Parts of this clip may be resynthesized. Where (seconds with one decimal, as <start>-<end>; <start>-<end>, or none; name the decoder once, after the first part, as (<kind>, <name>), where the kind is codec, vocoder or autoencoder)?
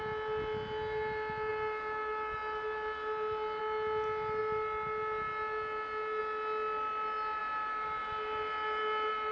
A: 1.5-3.6 (vocoder, BigVGAN v2); 7.4-9.3